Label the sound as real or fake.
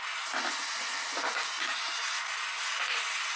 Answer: real